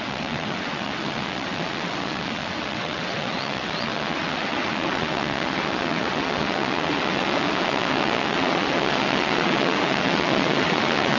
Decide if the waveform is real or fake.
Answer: fake